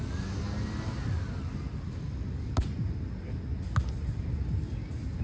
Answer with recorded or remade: recorded